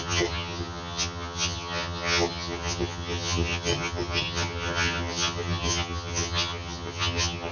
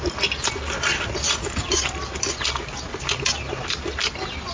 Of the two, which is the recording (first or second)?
second